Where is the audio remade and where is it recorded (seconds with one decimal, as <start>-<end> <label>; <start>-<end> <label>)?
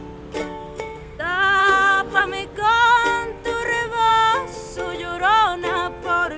0.0-0.4 recorded; 0.4-1.2 remade; 1.2-1.6 recorded; 1.6-2.2 remade; 2.2-6.4 recorded